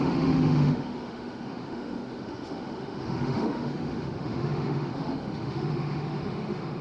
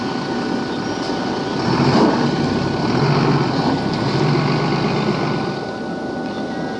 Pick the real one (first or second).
second